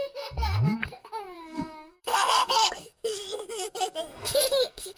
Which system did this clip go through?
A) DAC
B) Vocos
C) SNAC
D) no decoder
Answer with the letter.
C